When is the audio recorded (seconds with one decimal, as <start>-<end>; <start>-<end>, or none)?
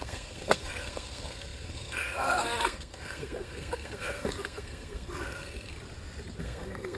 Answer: 5.7-6.4